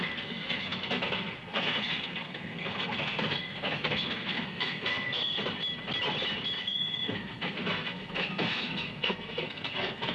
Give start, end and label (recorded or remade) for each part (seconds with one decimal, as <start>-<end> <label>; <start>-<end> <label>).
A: 0.0-5.4 remade; 5.4-6.6 recorded; 6.6-10.1 remade